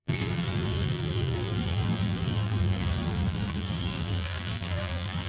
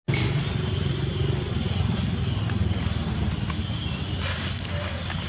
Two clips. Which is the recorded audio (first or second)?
second